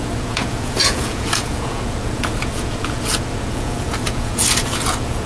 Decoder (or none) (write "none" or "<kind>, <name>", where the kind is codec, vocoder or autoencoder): vocoder, Vocos